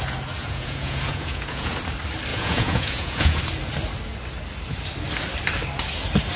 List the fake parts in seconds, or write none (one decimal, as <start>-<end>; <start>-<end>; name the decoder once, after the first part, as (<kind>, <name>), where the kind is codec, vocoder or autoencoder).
0.4-1.7 (vocoder, Vocos); 2.3-3.4